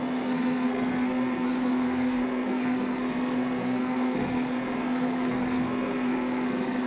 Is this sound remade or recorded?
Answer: remade